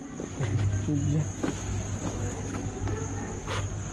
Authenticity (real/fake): real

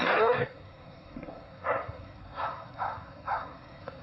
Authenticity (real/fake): fake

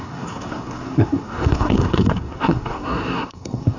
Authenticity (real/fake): fake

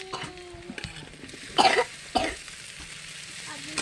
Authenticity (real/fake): fake